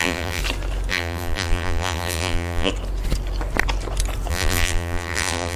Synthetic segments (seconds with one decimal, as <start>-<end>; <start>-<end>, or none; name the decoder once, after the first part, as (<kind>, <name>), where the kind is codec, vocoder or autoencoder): 0.0-0.4 (vocoder, BigVGAN v2); 0.9-2.7; 4.3-5.6